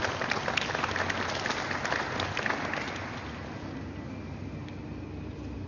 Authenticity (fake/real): real